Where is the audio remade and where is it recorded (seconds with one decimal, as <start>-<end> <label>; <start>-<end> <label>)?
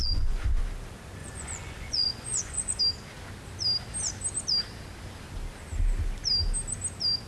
0.0-0.6 remade; 0.6-1.2 recorded; 1.2-2.8 remade; 2.8-7.3 recorded